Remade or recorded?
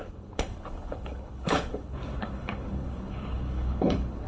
remade